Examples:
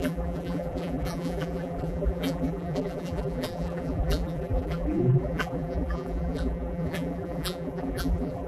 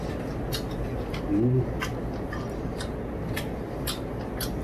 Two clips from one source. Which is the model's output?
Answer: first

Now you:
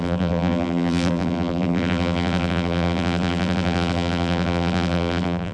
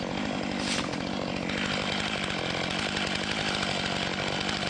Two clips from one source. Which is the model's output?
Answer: first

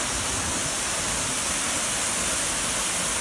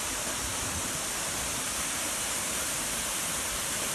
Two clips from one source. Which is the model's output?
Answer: second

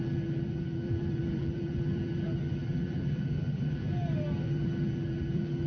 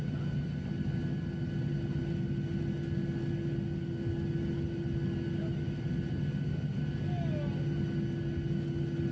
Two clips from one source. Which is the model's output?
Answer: first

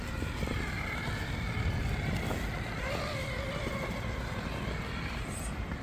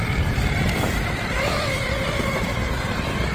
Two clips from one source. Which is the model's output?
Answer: second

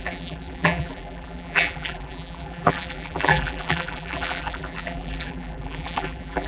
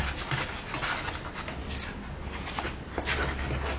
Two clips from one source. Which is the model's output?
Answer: first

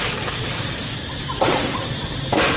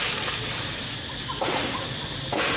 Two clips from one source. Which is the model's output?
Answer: first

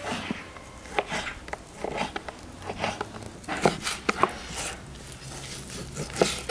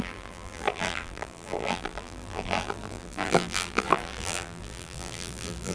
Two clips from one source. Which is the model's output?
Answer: second